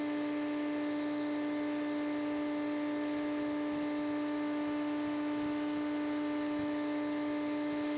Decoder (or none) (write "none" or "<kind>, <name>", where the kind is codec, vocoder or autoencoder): none